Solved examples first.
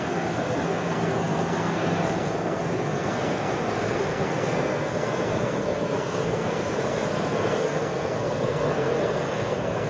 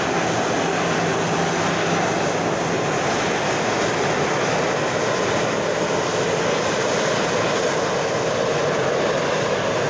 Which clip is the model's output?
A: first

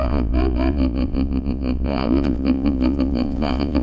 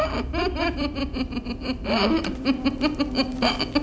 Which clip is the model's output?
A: first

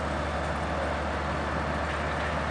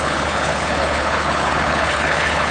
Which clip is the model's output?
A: second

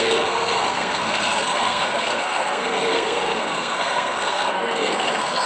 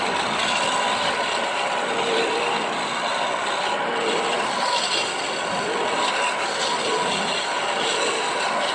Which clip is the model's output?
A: first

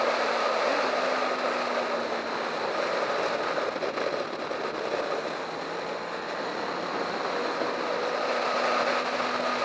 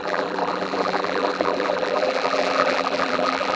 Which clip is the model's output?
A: second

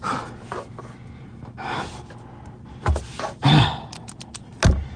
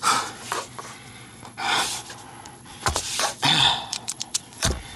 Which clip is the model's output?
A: second